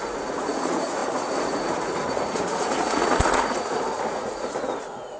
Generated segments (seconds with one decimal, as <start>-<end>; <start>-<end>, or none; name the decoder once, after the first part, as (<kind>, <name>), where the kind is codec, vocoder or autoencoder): 0.0-5.2 (vocoder, Vocos)